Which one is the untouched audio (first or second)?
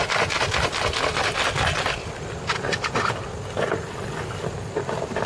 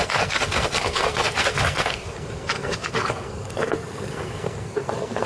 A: first